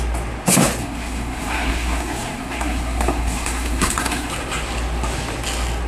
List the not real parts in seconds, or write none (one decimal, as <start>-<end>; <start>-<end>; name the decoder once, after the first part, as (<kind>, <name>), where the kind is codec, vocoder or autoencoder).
0.8-4.3 (codec, SNAC)